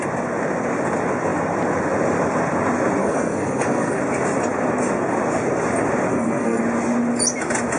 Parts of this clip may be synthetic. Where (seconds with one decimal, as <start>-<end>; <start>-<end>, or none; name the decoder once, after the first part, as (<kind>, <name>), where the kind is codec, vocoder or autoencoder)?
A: 3.0-4.0 (codec, SNAC); 6.1-6.6